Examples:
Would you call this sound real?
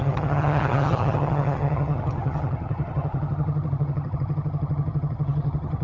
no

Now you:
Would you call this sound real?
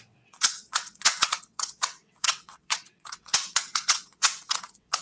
no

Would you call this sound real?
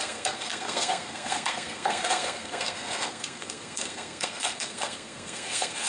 no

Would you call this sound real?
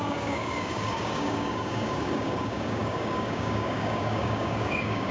no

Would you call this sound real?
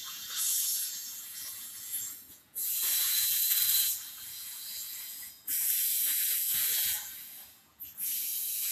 no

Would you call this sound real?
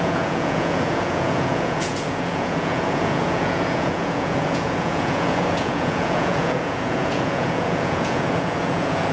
no